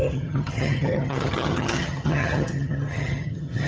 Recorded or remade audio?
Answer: remade